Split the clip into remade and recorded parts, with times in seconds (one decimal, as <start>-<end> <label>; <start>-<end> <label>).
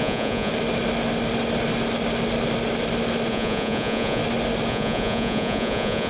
0.0-0.5 remade; 0.5-3.3 recorded; 3.3-4.2 remade; 4.2-4.7 recorded; 4.7-6.1 remade